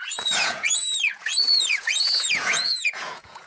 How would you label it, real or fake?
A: fake